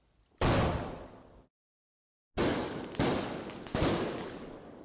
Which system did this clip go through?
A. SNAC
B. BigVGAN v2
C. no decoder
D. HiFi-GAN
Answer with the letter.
C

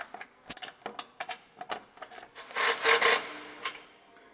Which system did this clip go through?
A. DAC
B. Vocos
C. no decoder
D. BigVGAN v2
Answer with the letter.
C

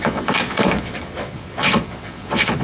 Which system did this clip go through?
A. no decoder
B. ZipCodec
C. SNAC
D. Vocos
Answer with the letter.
D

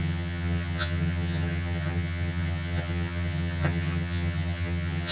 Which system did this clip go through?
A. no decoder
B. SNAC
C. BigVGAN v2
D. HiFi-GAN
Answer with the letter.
D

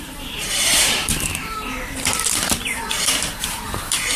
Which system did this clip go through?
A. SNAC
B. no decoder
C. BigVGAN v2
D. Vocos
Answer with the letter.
C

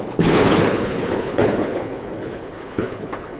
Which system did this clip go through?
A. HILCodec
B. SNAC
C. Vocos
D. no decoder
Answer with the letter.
A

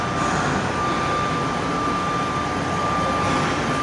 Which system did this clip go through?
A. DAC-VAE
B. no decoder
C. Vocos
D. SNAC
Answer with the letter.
B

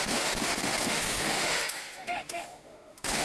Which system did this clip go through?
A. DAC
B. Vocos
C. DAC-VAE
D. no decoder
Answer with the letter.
C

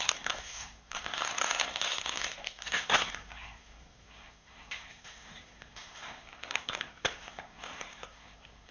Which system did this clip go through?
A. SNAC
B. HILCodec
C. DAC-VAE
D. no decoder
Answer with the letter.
A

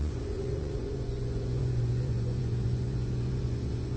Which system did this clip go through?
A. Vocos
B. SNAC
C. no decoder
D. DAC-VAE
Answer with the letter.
A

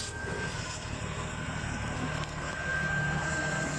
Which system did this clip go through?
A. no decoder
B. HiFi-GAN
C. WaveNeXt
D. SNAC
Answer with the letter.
D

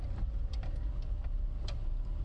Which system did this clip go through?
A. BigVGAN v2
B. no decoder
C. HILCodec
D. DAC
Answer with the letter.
A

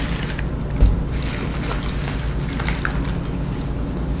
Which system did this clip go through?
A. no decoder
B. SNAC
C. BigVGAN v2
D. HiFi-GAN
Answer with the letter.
A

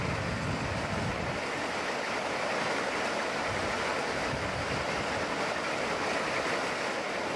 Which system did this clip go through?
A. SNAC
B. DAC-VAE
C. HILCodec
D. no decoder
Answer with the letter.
D